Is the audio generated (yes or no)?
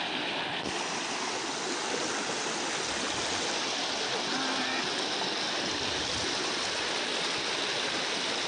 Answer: no